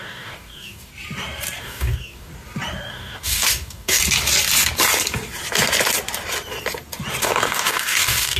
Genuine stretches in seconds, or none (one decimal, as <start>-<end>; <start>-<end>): 0.9-1.6; 2.3-2.9; 4.0-7.2